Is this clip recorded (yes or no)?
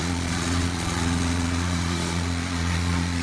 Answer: no